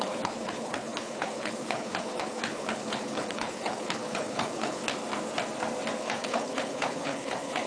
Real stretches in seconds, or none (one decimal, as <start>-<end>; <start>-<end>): 4.9-6.0